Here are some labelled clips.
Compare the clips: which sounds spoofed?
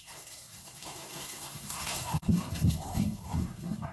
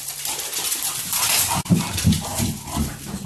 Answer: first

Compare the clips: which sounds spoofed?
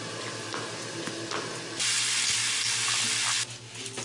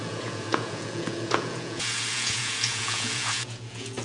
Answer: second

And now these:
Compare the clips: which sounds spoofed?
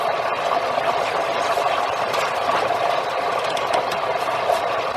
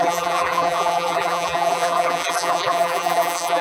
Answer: second